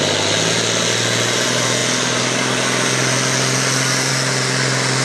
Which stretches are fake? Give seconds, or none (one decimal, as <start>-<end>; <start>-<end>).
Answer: none